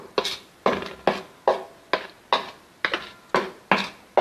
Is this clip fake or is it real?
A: real